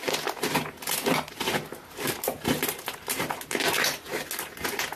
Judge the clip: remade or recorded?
recorded